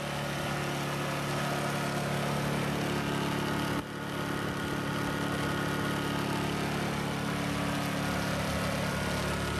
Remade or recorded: recorded